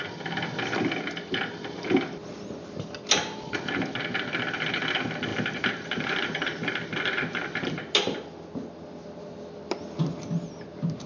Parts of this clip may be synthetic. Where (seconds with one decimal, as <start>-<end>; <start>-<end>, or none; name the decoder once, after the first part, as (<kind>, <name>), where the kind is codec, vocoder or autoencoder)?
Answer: 5.3-7.8 (vocoder, BigVGAN v2)

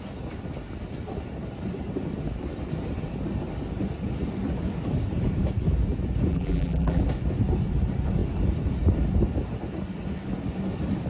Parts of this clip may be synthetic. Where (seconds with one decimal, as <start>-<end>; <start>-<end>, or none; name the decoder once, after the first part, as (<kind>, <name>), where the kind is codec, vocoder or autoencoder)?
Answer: 6.3-7.0 (vocoder, BigVGAN v2)

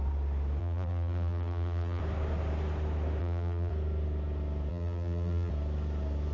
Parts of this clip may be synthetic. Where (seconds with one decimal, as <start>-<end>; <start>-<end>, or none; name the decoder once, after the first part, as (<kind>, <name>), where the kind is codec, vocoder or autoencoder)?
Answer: 0.6-2.0 (vocoder, BigVGAN v2); 3.2-3.7; 4.7-5.5

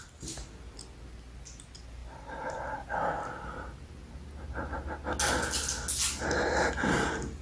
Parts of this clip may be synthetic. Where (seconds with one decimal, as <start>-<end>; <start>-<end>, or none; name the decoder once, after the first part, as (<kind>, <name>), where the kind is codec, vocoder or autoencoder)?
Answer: 2.0-4.1 (vocoder, BigVGAN v2)

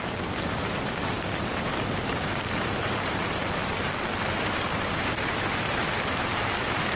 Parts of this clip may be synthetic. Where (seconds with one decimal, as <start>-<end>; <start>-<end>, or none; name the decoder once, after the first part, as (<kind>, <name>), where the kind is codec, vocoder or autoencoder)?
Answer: 0.0-3.4 (vocoder, BigVGAN v2); 4.2-7.0

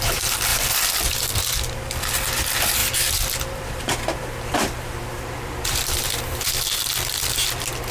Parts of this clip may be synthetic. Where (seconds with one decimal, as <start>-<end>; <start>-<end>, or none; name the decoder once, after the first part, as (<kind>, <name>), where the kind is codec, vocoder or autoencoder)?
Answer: 0.5-1.2 (vocoder, BigVGAN v2); 2.8-6.2

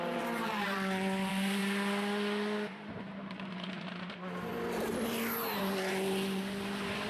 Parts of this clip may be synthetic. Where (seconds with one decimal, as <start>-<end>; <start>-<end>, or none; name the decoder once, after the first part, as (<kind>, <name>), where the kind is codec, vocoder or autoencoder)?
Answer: 0.0-1.6 (vocoder, BigVGAN v2); 3.0-4.5; 5.6-7.1

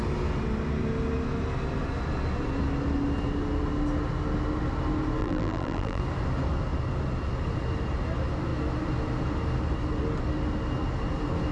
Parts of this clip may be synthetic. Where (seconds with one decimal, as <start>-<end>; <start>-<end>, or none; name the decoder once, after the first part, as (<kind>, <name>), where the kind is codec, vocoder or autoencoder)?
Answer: 5.2-6.0 (vocoder, BigVGAN v2)